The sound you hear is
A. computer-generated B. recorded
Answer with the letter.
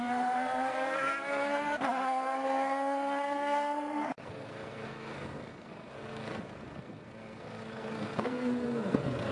A